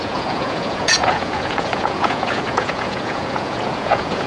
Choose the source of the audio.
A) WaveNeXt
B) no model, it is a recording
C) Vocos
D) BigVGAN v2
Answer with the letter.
C